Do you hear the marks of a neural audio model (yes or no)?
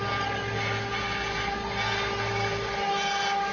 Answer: no